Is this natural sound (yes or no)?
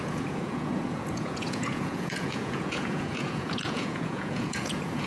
no